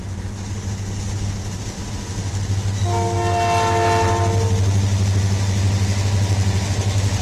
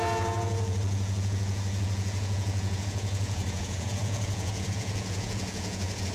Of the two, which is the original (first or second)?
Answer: first